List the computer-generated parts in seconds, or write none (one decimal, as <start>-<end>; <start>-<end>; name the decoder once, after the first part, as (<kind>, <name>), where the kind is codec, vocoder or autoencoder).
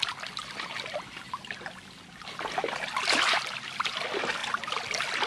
none